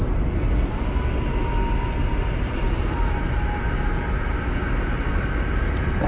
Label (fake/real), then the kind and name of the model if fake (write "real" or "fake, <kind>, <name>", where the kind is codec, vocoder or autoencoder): real